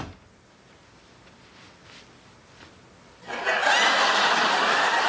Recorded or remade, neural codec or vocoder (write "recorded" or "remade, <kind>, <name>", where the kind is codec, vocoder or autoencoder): recorded